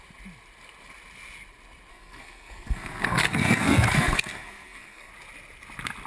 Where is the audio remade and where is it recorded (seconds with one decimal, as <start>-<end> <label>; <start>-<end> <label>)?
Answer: 0.0-1.9 recorded; 1.9-5.1 remade; 5.1-6.1 recorded